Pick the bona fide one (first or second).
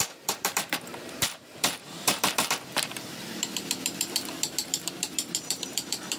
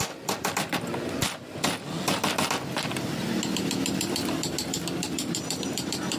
second